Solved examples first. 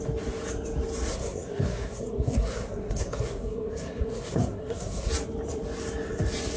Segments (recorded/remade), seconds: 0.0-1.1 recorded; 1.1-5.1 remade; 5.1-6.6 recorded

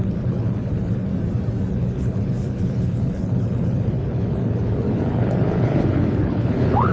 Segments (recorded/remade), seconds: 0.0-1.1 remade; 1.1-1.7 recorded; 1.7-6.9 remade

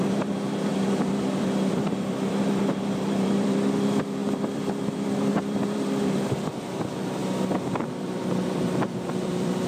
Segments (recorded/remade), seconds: 0.0-7.2 remade; 7.2-8.0 recorded; 8.0-9.7 remade

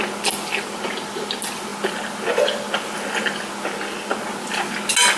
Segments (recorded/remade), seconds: 0.0-5.2 recorded